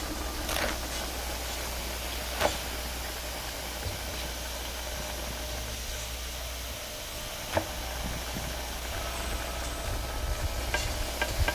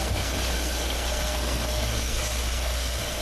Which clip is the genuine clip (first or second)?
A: first